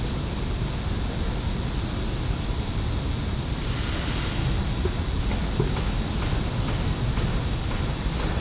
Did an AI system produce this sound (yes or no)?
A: no